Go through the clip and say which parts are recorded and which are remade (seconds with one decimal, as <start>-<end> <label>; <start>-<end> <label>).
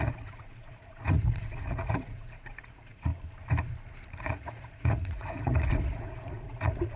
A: 0.0-3.1 remade; 3.1-4.2 recorded; 4.2-7.0 remade